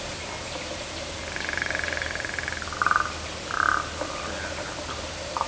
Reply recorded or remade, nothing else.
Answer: recorded